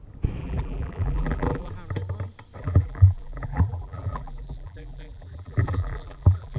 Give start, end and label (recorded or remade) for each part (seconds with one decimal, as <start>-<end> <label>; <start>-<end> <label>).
0.0-0.4 recorded; 0.4-1.7 remade; 1.7-2.6 recorded; 2.6-6.6 remade